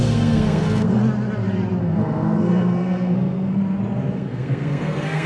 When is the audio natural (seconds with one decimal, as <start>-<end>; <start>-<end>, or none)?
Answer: 1.0-1.8; 3.6-4.1